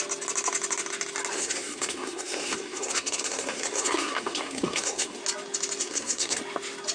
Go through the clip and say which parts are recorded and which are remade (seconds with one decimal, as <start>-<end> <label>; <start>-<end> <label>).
0.0-1.3 recorded; 1.3-5.2 remade; 5.2-5.8 recorded; 5.8-6.4 remade; 6.4-6.9 recorded